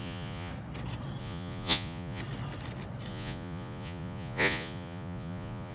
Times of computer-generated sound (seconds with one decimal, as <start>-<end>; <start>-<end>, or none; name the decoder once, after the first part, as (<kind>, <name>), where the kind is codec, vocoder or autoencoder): 0.0-0.5 (vocoder, Vocos); 1.2-2.2; 3.1-5.7